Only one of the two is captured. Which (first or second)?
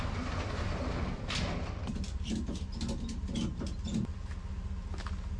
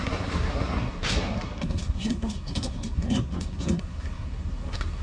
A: first